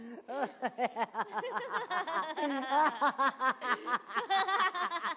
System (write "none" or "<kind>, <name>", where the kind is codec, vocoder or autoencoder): none